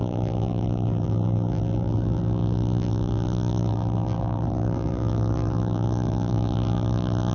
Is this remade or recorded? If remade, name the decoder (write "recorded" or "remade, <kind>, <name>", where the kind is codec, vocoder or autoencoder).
remade, vocoder, BigVGAN v2